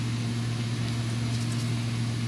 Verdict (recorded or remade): recorded